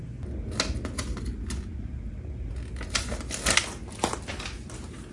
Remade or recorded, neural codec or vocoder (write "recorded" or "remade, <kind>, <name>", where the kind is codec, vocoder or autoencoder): recorded